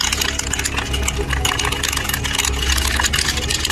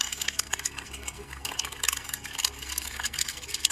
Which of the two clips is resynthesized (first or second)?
second